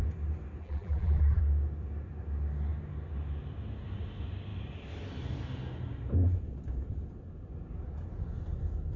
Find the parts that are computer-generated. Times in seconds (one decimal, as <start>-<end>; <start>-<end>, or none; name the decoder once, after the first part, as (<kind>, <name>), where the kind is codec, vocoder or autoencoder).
0.6-1.4 (vocoder, BigVGAN v2)